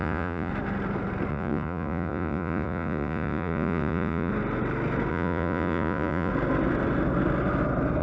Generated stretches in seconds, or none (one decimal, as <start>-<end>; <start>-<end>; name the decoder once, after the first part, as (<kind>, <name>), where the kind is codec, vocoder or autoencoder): 0.0-0.5 (vocoder, Vocos); 1.3-4.3; 5.1-6.3